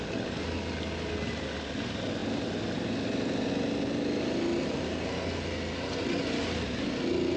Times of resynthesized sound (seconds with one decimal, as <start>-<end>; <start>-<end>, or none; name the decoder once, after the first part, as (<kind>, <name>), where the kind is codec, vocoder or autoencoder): none